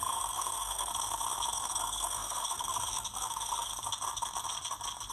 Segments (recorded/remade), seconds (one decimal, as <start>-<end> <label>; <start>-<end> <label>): 0.0-0.9 remade; 0.9-1.5 recorded; 1.5-3.7 remade; 3.7-5.1 recorded

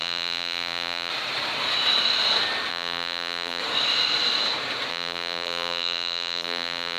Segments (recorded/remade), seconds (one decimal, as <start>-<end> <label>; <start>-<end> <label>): 0.0-1.1 remade; 1.1-2.7 recorded; 2.7-3.6 remade; 3.6-4.9 recorded; 4.9-7.0 remade

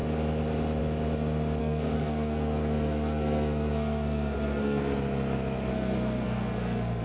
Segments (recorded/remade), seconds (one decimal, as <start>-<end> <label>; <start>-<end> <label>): 0.0-1.6 recorded; 1.6-4.8 remade; 4.8-5.7 recorded; 5.7-7.0 remade

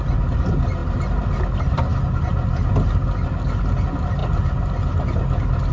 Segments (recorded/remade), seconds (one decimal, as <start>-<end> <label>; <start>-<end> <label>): 0.0-5.7 recorded

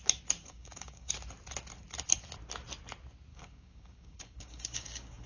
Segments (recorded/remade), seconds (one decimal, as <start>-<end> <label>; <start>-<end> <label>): 0.0-0.4 recorded; 0.4-1.1 remade; 1.1-3.3 recorded; 3.3-5.3 remade